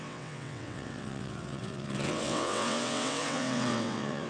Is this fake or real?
fake